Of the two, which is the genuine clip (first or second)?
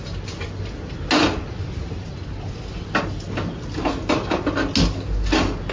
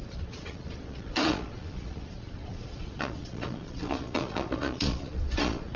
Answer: first